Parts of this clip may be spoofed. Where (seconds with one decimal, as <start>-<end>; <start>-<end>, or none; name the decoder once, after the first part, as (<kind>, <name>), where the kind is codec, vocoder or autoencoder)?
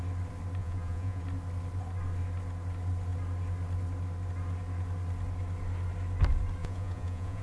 0.6-1.2 (vocoder, Vocos); 6.6-7.4